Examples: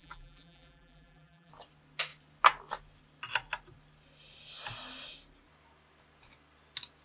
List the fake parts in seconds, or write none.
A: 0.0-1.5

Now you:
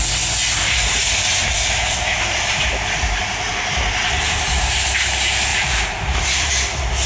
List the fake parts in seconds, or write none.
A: 1.4-3.5; 5.5-6.5

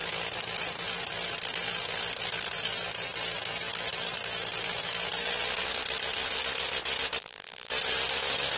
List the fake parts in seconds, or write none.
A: 7.2-7.7

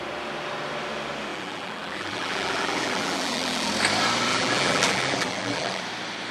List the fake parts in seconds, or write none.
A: 1.3-3.7; 4.3-5.8

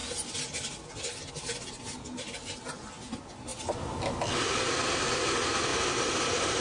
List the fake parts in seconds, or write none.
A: 5.7-6.6